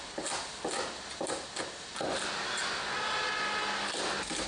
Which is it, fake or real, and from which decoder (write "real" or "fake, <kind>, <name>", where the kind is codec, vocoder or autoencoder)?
real